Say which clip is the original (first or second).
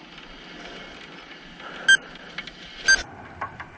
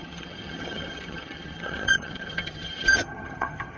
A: first